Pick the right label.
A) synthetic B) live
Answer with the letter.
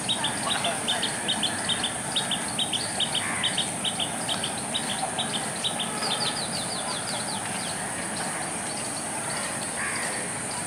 B